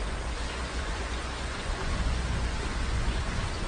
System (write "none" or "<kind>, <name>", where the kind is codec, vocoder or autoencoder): vocoder, Vocos